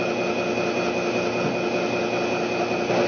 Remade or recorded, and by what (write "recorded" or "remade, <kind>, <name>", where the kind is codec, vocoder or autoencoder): recorded